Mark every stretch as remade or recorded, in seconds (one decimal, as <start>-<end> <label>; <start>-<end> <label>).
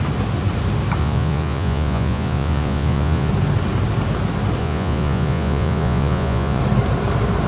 0.0-1.0 recorded; 1.0-3.3 remade; 3.3-4.6 recorded; 4.6-6.6 remade; 6.6-7.5 recorded